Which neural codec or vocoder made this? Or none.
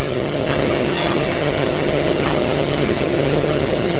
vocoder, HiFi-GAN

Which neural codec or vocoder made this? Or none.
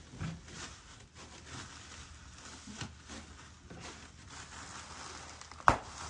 none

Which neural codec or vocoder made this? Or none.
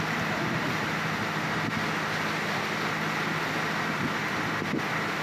none